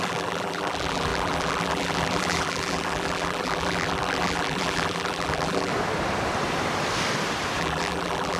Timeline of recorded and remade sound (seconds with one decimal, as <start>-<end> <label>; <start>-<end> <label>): 0.0-5.7 remade; 5.7-7.6 recorded; 7.6-8.4 remade